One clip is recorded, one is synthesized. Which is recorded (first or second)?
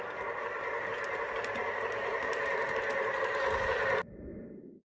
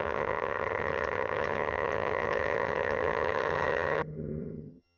first